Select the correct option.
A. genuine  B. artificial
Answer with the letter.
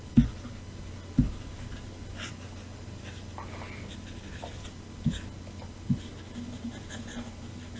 A